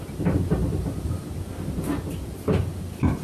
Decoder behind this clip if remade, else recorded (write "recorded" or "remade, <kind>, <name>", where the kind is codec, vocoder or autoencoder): recorded